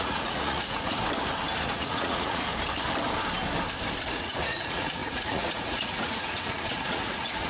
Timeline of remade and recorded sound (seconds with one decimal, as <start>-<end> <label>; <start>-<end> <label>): 0.0-1.0 remade; 1.0-1.6 recorded; 1.6-2.5 remade; 2.5-4.1 recorded; 4.1-7.5 remade